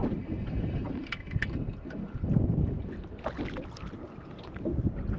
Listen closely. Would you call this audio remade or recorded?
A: recorded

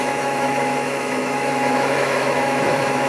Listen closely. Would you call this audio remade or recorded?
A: remade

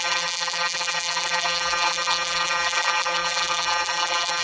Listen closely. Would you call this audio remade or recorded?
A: remade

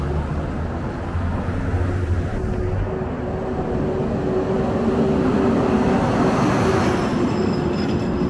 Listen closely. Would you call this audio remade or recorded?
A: recorded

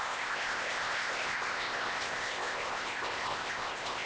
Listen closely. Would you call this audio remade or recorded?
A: remade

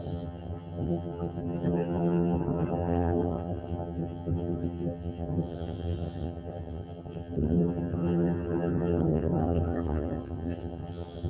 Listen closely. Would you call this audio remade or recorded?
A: remade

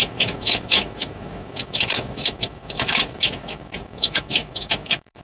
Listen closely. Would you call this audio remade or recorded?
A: remade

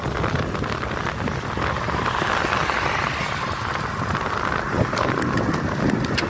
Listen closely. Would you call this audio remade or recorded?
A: recorded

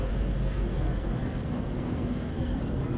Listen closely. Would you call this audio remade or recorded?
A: remade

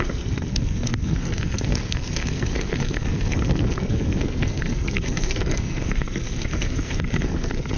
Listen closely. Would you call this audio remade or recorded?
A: remade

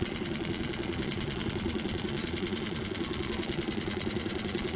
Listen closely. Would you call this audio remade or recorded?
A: remade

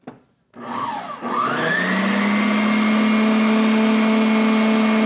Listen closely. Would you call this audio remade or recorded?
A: recorded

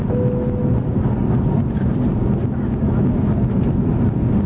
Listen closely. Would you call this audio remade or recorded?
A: recorded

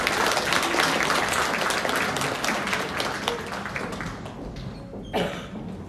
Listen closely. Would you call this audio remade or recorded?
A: recorded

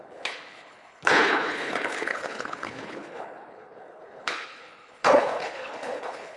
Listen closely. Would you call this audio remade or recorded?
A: remade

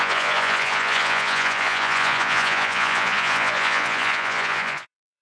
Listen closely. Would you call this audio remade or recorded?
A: remade